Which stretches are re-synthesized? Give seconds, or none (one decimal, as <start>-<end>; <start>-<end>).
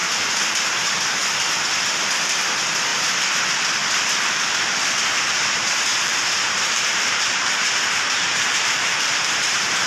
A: 0.0-1.1; 2.9-3.4; 5.9-9.9